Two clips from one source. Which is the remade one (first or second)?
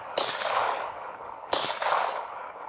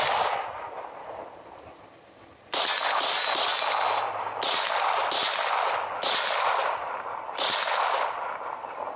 first